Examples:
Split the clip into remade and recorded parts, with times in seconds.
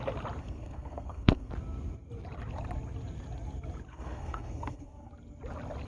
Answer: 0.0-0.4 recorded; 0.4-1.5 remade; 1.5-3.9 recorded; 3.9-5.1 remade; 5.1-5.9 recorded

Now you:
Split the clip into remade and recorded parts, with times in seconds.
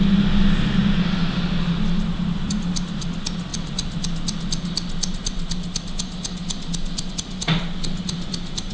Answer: 0.0-8.7 recorded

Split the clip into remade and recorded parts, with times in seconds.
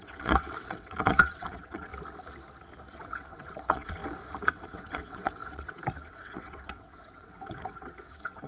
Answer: 0.0-1.9 remade; 1.9-2.9 recorded; 2.9-4.0 remade; 4.0-4.5 recorded; 4.5-8.5 remade